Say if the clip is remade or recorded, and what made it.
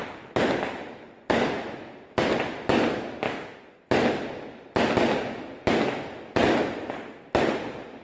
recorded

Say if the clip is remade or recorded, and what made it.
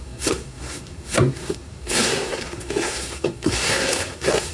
remade, codec, SNAC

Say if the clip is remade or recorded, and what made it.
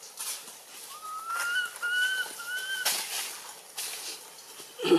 recorded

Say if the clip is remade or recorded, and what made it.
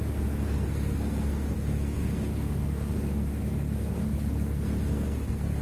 remade, codec, SNAC